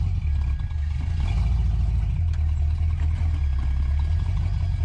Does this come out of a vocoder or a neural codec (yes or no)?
no